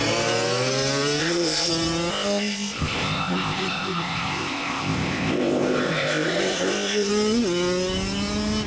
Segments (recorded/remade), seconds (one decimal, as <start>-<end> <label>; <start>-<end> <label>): 0.0-1.2 recorded; 1.2-1.7 remade; 1.7-2.1 recorded; 2.1-7.1 remade; 7.1-8.7 recorded